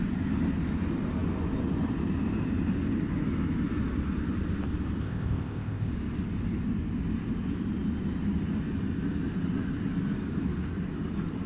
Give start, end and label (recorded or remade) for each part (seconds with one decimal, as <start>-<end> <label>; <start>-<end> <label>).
0.0-5.0 recorded; 5.0-5.9 remade; 5.9-11.5 recorded